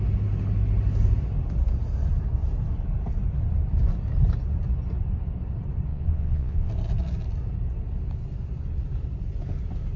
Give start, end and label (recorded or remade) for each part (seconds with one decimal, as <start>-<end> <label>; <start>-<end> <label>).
0.0-5.9 recorded; 5.9-6.7 remade; 6.7-10.0 recorded